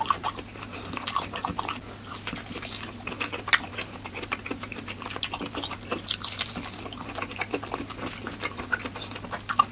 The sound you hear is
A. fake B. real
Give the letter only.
B